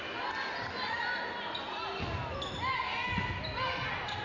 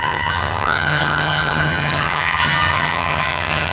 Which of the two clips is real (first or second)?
first